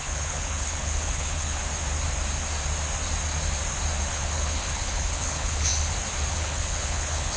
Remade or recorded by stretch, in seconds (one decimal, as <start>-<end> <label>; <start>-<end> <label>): 0.0-1.6 remade; 1.6-4.1 recorded; 4.1-5.7 remade; 5.7-6.3 recorded; 6.3-7.4 remade